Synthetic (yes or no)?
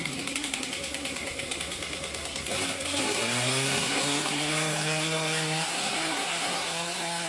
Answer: yes